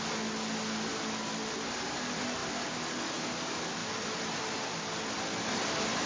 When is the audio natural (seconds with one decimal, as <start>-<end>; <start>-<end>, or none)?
0.0-6.1